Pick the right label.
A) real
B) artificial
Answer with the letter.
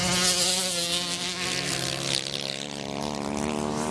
A